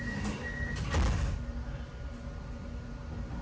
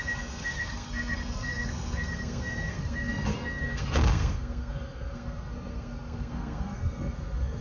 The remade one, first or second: second